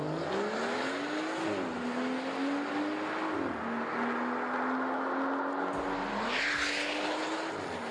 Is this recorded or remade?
recorded